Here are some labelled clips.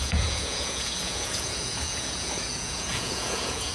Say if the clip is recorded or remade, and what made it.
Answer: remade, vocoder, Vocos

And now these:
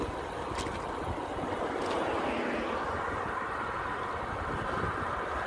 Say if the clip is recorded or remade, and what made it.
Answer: recorded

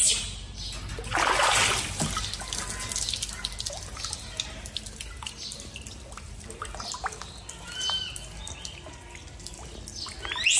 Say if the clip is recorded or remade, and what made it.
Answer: recorded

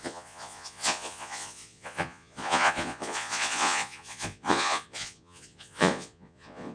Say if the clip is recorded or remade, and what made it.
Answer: remade, vocoder, Vocos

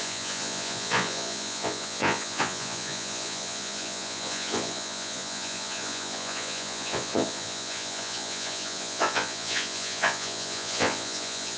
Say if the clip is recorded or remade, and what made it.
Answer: remade, vocoder, Vocos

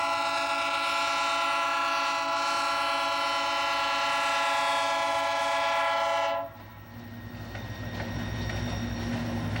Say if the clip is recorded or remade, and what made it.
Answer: recorded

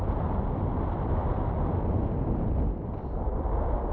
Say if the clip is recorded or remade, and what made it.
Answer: recorded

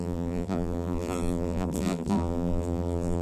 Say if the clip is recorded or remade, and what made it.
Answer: remade, vocoder, BigVGAN v2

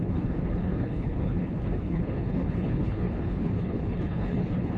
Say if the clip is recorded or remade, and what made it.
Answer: remade, codec, HILCodec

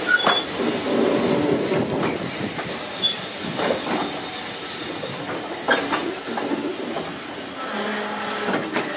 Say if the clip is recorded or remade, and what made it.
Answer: recorded